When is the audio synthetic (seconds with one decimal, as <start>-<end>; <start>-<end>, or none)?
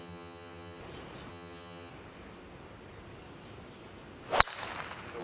0.0-0.8; 1.3-1.9